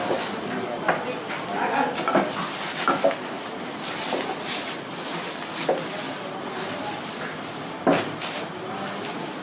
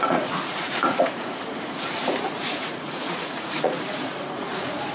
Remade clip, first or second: second